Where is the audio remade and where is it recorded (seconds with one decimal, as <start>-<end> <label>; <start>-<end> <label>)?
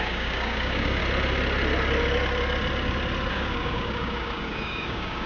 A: 0.0-1.0 remade; 1.0-3.3 recorded; 3.3-5.3 remade